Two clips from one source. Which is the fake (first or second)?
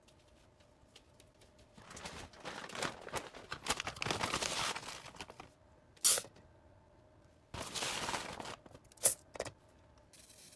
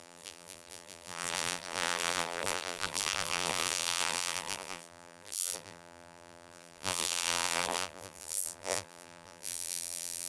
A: second